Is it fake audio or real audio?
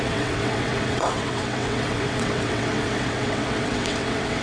fake